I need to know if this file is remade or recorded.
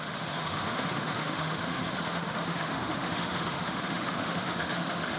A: remade